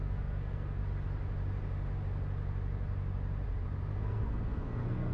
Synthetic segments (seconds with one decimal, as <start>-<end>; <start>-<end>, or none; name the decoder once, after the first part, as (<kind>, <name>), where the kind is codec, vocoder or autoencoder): 0.0-0.8 (codec, SNAC); 3.9-5.1